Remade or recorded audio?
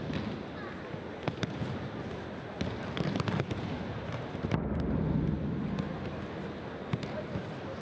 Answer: recorded